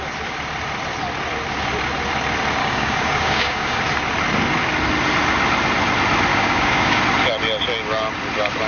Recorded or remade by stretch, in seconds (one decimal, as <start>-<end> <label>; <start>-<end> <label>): 0.0-2.6 recorded; 2.6-3.8 remade; 3.8-6.3 recorded; 6.3-7.0 remade; 7.0-8.7 recorded